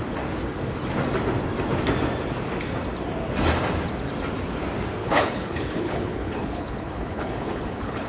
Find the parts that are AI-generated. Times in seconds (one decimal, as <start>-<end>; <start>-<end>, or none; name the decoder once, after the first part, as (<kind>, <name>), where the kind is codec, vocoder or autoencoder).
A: 5.0-8.1 (codec, HILCodec)